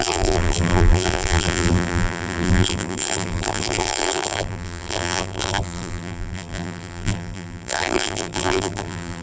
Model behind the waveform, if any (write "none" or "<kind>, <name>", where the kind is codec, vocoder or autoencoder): vocoder, BigVGAN v2